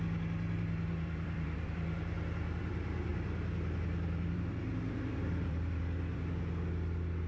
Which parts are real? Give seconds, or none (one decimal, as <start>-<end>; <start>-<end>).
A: 3.1-3.8